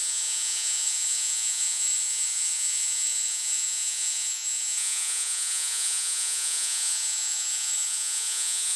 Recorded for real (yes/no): no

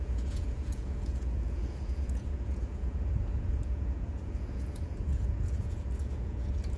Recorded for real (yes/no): no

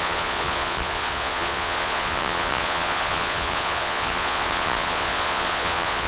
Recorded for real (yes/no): no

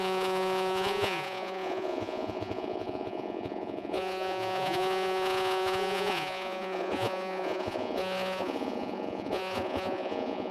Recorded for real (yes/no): no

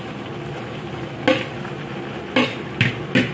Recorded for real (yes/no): yes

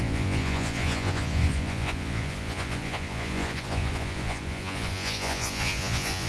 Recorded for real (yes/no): no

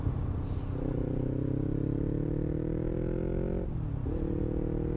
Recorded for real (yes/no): yes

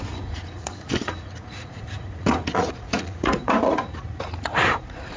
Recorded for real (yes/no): no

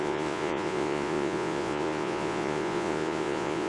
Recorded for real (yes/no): no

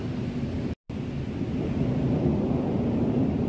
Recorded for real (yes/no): yes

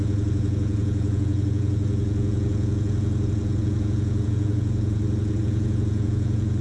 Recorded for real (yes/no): no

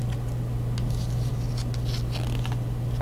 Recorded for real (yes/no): yes